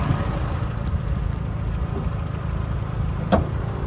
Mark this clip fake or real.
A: real